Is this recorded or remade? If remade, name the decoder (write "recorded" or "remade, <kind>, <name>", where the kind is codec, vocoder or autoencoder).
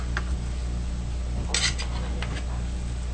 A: recorded